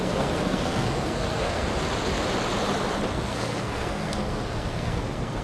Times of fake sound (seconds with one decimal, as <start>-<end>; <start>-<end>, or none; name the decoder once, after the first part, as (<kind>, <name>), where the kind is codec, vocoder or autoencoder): 0.0-1.7 (codec, SNAC); 3.1-5.4